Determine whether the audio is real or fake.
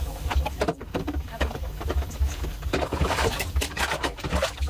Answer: fake